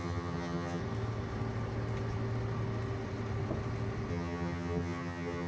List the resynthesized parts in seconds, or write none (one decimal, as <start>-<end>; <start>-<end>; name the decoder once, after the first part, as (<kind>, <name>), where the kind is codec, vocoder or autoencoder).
0.0-0.8 (vocoder, HiFi-GAN); 4.1-5.5